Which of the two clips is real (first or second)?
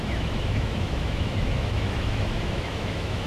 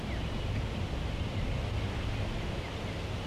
second